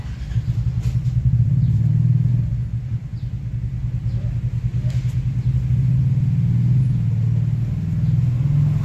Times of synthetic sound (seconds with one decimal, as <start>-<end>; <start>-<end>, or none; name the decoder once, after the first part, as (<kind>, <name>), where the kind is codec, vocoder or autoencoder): 1.0-2.3 (vocoder, BigVGAN v2)